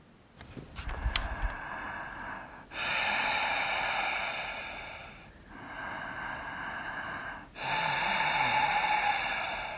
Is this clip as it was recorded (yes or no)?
yes